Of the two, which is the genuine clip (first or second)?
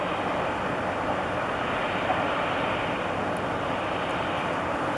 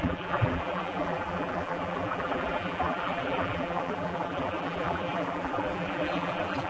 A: first